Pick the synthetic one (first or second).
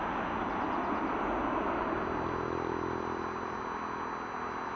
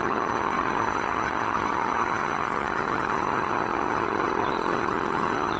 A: second